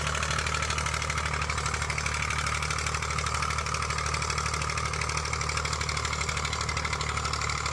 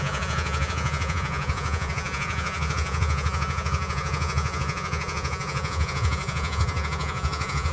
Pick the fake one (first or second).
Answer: second